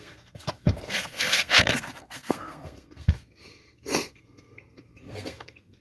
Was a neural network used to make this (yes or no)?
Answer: yes